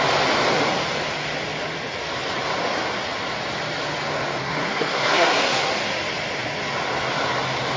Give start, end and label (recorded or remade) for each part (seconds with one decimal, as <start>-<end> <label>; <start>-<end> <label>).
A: 0.0-4.4 recorded; 4.4-5.7 remade; 5.7-7.8 recorded